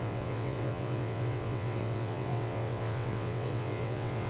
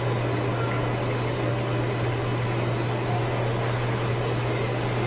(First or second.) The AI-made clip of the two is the first